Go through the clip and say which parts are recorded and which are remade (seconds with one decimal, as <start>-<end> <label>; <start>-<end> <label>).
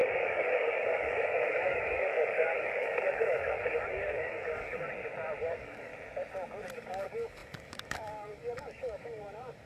0.0-4.9 remade; 4.9-5.4 recorded; 5.4-5.9 remade; 5.9-6.7 recorded; 6.7-9.7 remade